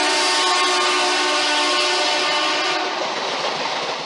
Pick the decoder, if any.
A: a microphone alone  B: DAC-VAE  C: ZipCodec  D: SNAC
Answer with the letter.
A